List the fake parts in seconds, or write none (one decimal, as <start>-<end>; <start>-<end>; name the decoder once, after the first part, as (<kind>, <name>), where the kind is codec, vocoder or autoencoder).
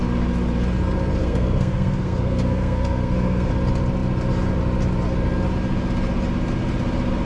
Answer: 1.2-3.5 (codec, SNAC)